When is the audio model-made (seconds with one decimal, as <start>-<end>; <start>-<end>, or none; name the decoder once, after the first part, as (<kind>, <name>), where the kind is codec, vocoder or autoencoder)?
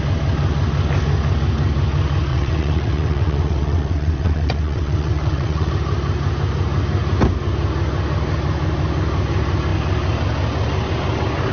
2.3-5.7 (vocoder, WaveNeXt)